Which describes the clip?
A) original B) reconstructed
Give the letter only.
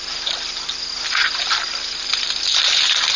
A